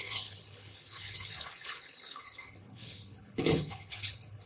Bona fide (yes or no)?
no